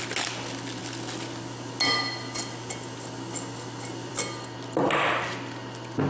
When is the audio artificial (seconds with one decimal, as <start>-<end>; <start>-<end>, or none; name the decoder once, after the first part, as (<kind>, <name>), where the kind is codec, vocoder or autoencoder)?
none